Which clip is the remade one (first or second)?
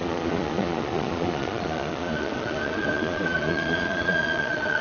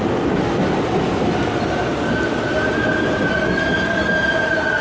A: first